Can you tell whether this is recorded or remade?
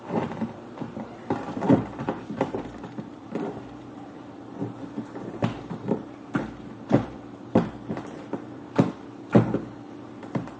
remade